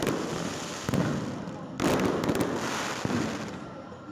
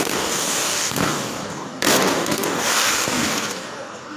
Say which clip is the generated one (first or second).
second